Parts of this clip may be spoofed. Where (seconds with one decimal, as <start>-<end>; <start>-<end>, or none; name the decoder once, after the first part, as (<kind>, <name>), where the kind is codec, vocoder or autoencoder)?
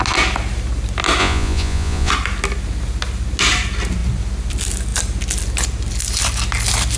1.2-2.1 (vocoder, Vocos)